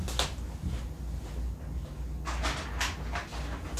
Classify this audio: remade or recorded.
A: recorded